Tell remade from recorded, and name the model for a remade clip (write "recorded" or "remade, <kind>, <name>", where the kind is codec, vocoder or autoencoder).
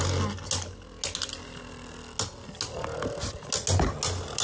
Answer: recorded